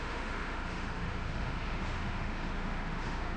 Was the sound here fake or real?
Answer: fake